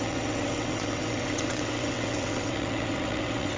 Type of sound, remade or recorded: remade